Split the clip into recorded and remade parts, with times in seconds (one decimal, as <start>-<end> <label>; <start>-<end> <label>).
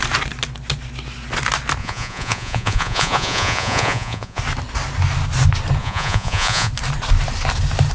0.0-1.8 recorded; 1.8-4.4 remade; 4.4-5.8 recorded; 5.8-6.7 remade; 6.7-7.9 recorded